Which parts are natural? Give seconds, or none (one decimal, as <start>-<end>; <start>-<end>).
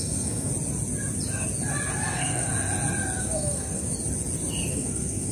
0.5-2.1; 2.5-3.2; 3.9-4.7